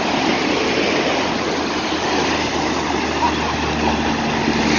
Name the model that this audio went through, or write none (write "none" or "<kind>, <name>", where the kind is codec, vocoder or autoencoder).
none